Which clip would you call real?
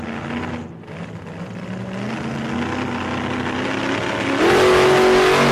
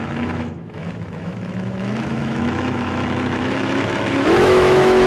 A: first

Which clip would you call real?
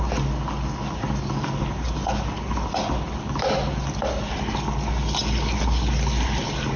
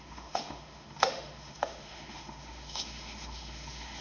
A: first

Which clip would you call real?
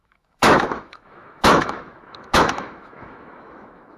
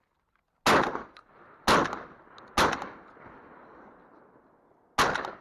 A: second